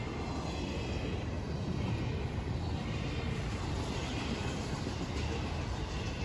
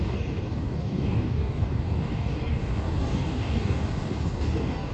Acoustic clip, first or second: first